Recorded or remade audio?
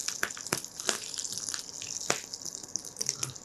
recorded